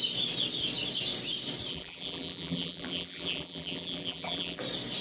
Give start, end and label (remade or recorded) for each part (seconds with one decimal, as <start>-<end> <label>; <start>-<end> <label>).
0.0-1.7 recorded; 1.7-4.6 remade; 4.6-5.0 recorded